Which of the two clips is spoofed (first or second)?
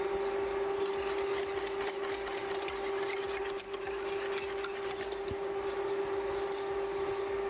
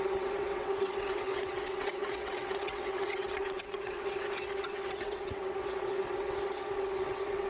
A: second